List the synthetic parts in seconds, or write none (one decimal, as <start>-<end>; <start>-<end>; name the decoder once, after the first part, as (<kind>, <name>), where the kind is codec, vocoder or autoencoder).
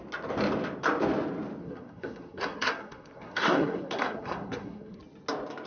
1.6-5.0 (codec, SNAC)